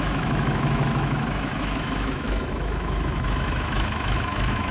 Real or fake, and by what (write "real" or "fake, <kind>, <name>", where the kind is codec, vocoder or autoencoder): fake, autoencoder, DAC-VAE